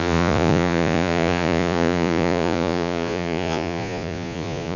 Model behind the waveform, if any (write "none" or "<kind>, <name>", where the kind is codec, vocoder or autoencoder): vocoder, Vocos